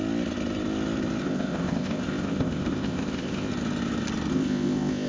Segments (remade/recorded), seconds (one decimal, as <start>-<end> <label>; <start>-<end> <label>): 0.0-1.2 recorded; 1.2-3.5 remade; 3.5-4.3 recorded; 4.3-5.1 remade